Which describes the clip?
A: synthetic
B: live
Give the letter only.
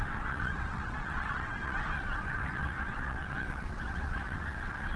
A